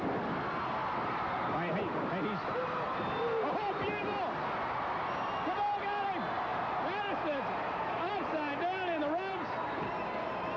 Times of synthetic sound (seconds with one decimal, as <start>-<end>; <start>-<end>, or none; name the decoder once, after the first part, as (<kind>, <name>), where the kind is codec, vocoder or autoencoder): none